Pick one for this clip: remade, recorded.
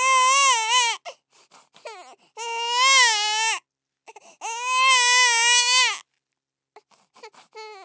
recorded